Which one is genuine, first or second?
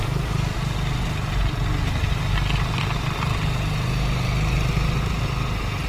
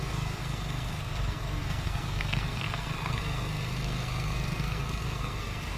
first